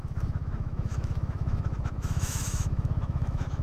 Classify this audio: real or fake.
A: fake